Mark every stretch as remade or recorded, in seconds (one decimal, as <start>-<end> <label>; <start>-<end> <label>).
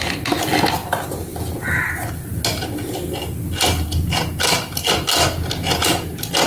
0.0-6.5 recorded